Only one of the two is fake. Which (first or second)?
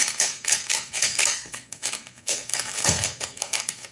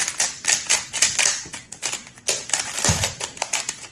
first